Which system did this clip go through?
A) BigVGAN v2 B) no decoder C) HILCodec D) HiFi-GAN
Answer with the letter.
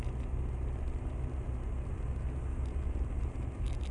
B